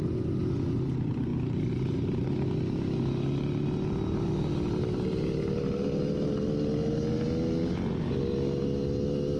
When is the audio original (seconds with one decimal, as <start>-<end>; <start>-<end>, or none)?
0.0-9.4